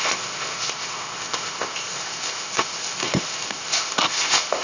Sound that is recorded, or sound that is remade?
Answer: remade